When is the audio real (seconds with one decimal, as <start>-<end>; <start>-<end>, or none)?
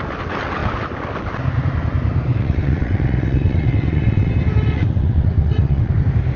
0.0-2.3; 4.3-4.7; 5.9-6.4